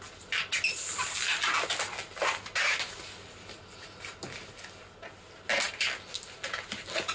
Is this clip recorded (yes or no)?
yes